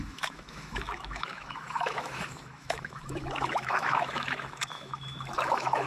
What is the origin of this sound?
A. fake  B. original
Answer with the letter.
A